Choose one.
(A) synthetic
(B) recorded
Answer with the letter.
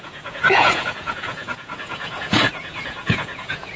A